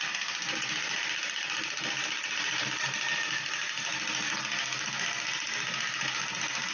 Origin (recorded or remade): recorded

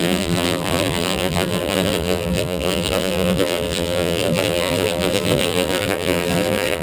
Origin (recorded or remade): remade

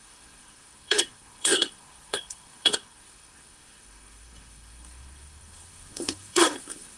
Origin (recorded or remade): remade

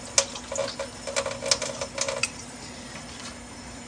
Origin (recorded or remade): recorded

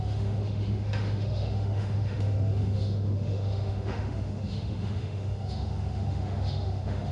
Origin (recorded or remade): remade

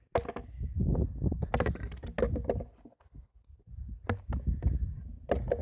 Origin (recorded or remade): recorded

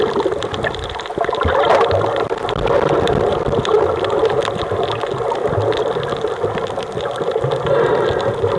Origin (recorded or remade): recorded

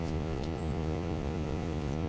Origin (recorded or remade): remade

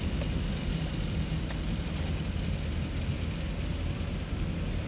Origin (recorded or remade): recorded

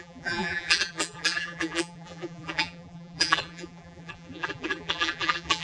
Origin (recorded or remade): remade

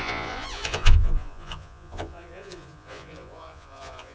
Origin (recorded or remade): remade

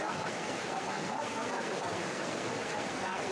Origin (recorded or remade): remade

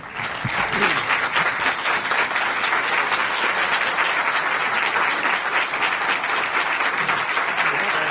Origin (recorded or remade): recorded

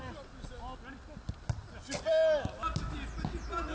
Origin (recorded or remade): recorded